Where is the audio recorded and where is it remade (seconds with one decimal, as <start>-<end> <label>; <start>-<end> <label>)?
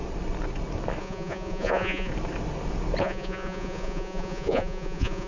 0.0-1.0 recorded; 1.0-2.1 remade; 2.1-3.0 recorded; 3.0-5.3 remade